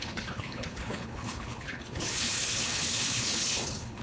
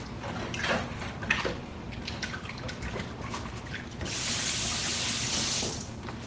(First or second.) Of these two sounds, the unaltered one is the second